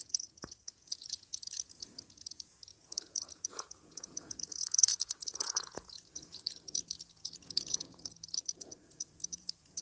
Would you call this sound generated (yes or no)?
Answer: yes